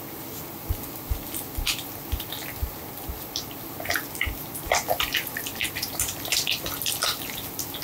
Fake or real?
real